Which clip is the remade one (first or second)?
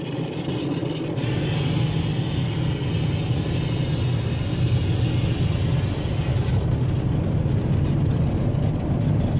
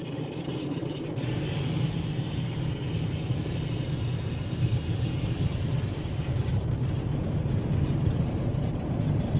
second